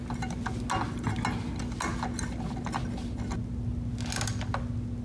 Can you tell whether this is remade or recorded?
recorded